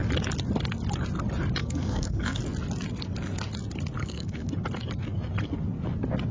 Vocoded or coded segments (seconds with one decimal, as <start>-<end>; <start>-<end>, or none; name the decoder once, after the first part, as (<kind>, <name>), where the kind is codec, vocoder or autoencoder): 1.6-2.4 (codec, SNAC); 4.0-4.5